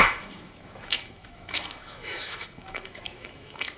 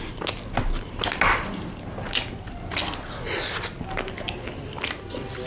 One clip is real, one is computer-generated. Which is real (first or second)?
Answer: second